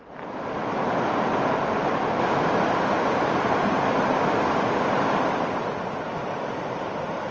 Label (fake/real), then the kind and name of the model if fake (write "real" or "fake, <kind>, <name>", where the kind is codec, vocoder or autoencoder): real